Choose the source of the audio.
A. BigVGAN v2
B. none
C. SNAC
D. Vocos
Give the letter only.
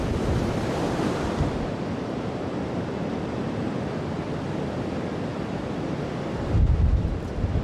A